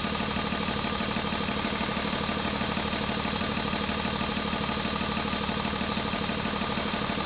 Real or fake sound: real